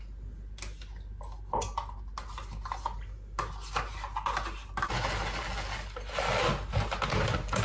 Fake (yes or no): no